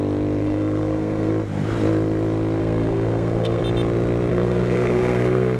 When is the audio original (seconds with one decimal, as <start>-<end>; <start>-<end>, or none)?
0.0-0.4; 1.3-2.6; 3.6-4.3